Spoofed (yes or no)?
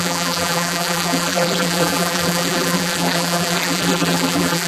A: yes